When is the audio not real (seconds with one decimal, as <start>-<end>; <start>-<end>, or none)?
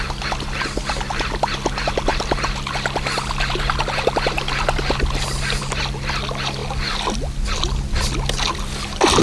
none